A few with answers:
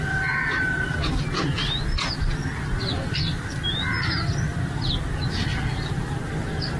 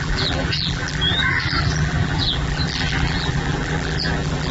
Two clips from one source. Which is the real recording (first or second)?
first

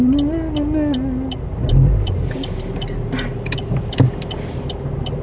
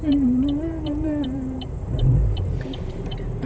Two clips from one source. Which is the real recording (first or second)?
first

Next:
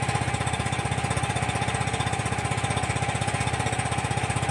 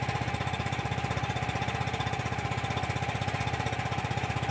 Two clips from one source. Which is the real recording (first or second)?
first